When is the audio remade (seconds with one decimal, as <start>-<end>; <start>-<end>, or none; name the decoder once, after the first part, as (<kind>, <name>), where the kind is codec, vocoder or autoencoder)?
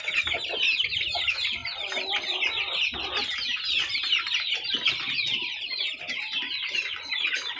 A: none